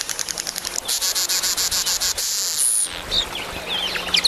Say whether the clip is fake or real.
real